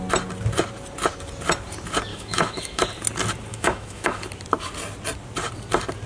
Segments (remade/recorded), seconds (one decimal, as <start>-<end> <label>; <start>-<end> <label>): 0.0-2.1 recorded; 2.1-2.8 remade; 2.8-3.5 recorded; 3.5-4.2 remade; 4.2-6.1 recorded